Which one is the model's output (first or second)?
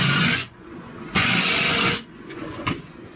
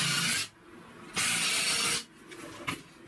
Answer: first